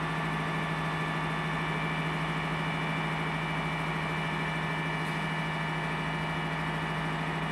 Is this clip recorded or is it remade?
recorded